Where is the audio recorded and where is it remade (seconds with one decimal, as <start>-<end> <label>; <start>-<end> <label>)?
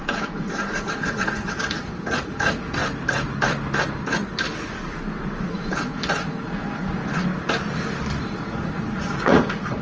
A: 0.0-2.8 remade; 2.8-5.5 recorded; 5.5-7.0 remade; 7.0-8.2 recorded; 8.2-9.8 remade